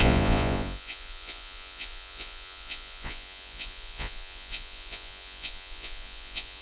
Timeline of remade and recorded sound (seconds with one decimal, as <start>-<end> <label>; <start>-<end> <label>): 0.0-6.6 remade